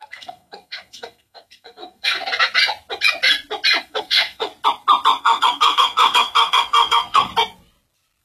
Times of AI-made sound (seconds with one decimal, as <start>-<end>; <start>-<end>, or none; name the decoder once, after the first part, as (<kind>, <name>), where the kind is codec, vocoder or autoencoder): 0.0-2.2 (codec, SNAC); 3.8-4.5; 5.2-7.3